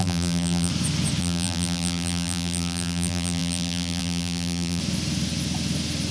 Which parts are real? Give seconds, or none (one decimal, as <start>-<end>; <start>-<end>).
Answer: 0.7-1.2; 4.8-6.1